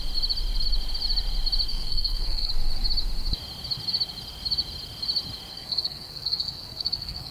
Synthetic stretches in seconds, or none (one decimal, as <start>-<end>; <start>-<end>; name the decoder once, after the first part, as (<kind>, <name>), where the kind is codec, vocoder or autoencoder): 1.7-2.5 (codec, SNAC); 5.5-7.3